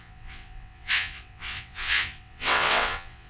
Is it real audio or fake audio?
fake